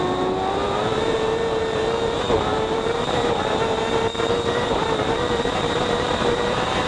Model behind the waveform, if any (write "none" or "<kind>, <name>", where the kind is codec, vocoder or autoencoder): vocoder, BigVGAN v2